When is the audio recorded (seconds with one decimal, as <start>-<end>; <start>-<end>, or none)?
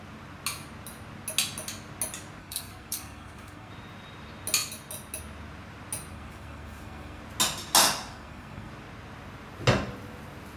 0.0-2.4; 3.7-6.1; 7.2-8.1; 8.7-10.6